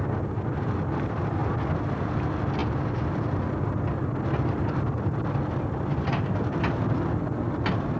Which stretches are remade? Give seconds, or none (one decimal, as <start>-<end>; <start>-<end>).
none